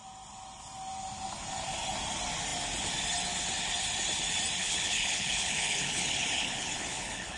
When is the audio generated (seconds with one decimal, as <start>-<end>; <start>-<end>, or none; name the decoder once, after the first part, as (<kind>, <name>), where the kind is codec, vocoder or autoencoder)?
4.6-7.4 (codec, HILCodec)